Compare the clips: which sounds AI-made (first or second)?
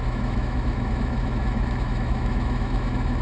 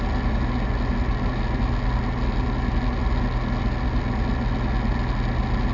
first